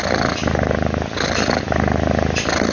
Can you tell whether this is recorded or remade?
recorded